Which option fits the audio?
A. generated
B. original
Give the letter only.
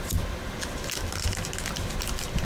B